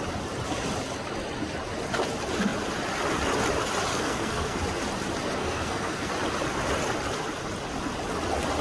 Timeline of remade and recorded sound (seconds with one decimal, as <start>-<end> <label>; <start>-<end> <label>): 0.0-3.9 recorded; 3.9-4.6 remade; 4.6-5.4 recorded; 5.4-6.1 remade; 6.1-8.6 recorded